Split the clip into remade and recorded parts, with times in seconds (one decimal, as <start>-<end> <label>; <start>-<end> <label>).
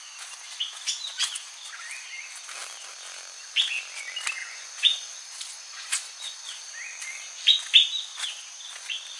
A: 0.0-1.1 recorded; 1.1-1.7 remade; 1.7-4.4 recorded; 4.4-6.6 remade; 6.6-8.1 recorded; 8.1-8.7 remade; 8.7-9.2 recorded